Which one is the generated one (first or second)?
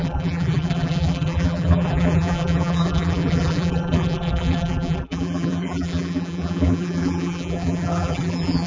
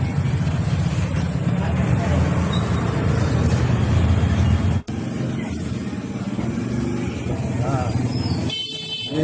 first